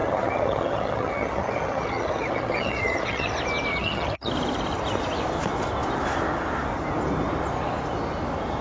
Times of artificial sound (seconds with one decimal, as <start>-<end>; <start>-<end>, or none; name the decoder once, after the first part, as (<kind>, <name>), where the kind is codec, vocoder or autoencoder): 0.0-3.3 (vocoder, HiFi-GAN); 3.7-4.3